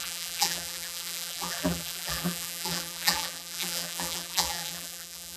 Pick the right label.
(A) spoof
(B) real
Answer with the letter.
A